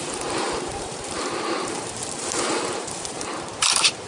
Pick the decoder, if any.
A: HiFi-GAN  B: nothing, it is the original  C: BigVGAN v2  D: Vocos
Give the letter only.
C